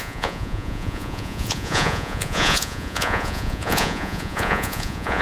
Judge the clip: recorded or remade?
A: remade